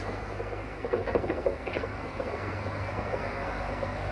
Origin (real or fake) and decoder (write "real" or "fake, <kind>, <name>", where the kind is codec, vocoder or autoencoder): fake, codec, SNAC